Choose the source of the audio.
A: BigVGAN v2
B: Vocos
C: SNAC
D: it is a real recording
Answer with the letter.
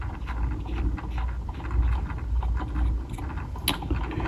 D